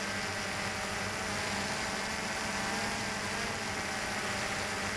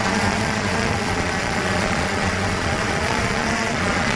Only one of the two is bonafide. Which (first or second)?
first